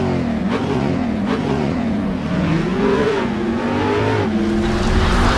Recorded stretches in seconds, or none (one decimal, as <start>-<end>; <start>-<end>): 0.0-0.4; 3.6-5.4

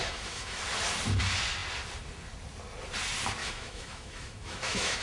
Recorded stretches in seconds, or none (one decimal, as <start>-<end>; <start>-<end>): 0.6-3.4

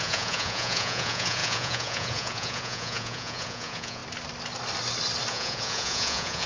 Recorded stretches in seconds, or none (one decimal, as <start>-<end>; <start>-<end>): 4.0-5.3

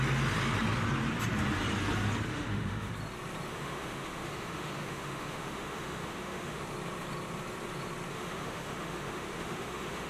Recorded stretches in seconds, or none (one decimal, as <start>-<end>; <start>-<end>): 0.0-2.3; 2.9-3.5; 6.6-8.1

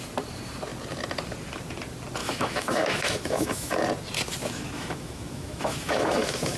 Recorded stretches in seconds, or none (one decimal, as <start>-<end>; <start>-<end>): 0.0-2.2; 3.8-4.4

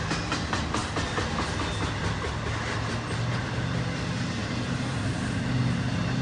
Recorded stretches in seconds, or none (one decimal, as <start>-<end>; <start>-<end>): 0.0-4.4; 5.1-6.2

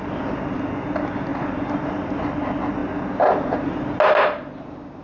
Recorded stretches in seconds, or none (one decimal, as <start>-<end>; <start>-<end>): 0.0-5.0